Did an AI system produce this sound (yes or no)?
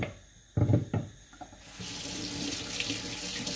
no